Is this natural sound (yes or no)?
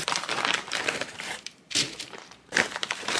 no